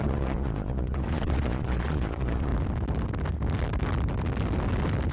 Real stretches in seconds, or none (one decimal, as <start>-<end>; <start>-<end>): 2.5-5.1